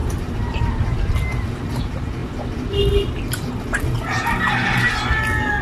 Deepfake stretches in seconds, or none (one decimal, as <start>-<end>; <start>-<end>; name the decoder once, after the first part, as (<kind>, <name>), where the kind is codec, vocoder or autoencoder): none

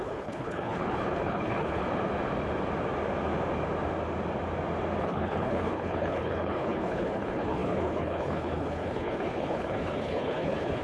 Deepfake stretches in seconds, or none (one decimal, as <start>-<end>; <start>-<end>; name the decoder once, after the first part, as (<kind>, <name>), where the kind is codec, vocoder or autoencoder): 0.0-1.8 (codec, HILCodec); 5.0-10.8

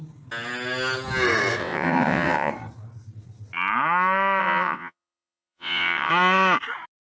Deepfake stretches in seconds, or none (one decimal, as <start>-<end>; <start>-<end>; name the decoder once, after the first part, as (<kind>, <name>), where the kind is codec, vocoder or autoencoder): 1.6-2.5 (vocoder, WaveNeXt); 4.4-6.1